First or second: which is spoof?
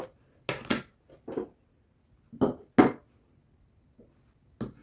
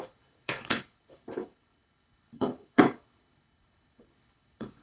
second